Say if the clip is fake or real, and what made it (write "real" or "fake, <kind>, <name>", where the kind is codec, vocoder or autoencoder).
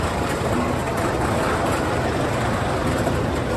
fake, vocoder, BigVGAN v2